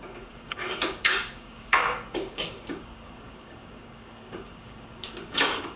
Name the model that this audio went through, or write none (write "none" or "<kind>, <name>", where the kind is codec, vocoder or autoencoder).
codec, DAC